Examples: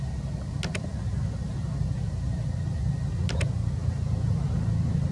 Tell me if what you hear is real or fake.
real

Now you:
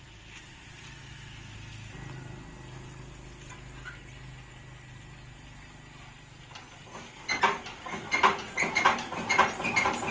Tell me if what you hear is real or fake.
real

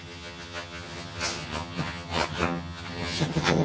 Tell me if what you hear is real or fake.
fake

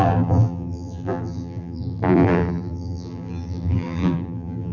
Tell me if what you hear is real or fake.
fake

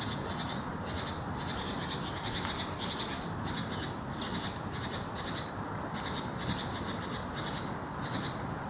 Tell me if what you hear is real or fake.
real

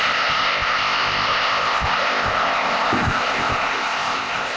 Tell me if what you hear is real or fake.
fake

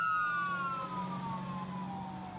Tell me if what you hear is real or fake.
real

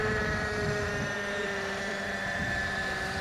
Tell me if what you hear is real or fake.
fake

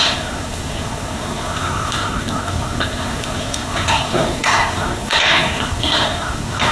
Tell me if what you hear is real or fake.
fake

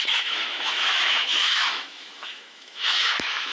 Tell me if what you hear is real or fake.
fake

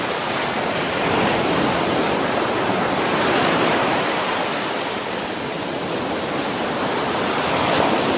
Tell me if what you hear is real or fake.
real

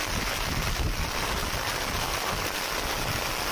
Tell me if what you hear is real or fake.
real